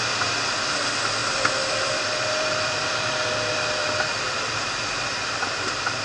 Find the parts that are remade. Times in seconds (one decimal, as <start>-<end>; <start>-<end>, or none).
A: 1.2-4.8